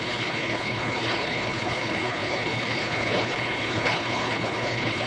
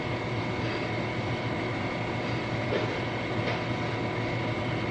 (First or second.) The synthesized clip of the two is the first